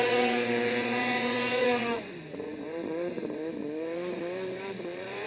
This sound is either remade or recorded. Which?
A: remade